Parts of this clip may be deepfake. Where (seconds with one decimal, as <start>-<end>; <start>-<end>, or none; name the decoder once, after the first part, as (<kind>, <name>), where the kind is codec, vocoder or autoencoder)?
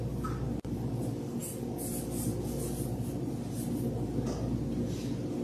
none